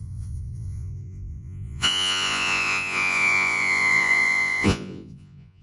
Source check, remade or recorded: remade